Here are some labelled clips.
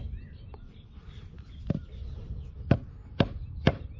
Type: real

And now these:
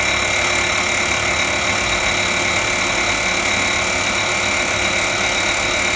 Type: real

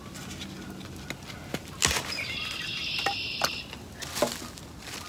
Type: real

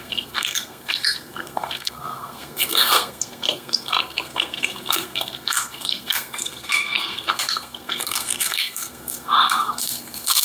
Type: fake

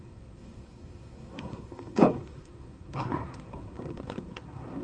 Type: fake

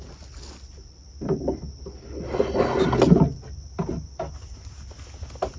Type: real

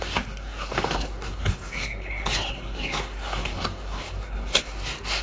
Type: fake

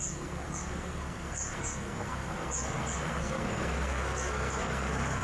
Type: fake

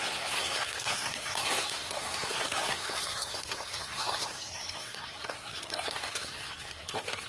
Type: fake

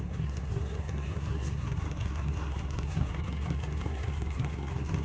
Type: fake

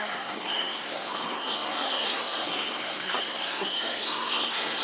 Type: fake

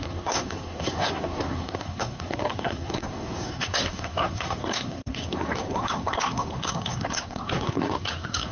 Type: fake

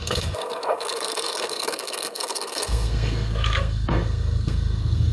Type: fake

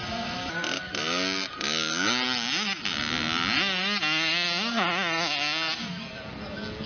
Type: real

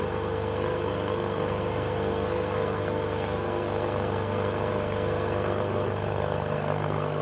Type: fake